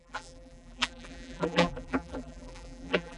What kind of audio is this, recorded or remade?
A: remade